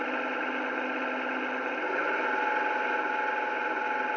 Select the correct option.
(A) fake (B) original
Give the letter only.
B